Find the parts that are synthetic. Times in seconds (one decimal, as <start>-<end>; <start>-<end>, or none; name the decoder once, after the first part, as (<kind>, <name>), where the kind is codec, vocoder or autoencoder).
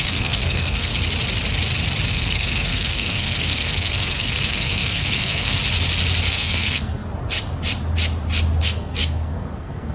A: 0.0-0.9 (codec, SNAC); 2.1-5.6; 6.3-7.0; 8.6-9.9